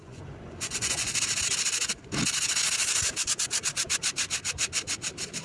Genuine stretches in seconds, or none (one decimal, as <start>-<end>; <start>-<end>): 1.2-5.4